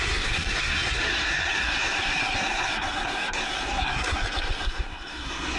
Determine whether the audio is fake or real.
fake